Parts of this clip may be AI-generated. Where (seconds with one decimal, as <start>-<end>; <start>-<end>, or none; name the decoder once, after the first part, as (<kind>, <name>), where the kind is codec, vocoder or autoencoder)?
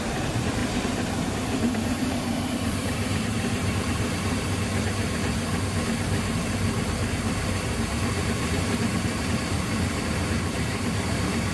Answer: 0.0-11.5 (vocoder, BigVGAN v2)